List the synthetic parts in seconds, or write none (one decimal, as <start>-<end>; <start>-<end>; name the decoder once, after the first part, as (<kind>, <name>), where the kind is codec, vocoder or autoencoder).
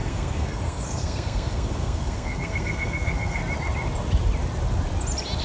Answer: 0.0-3.4 (codec, SNAC)